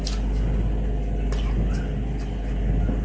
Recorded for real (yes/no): yes